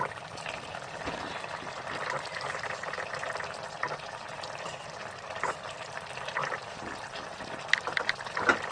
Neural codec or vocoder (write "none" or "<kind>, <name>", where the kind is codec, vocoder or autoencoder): none